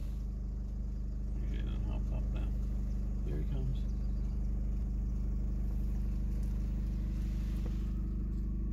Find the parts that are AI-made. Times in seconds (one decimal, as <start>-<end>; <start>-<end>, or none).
0.0-0.8; 3.7-5.1